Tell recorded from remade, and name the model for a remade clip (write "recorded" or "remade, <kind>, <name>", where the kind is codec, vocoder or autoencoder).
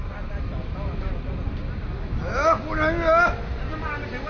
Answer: recorded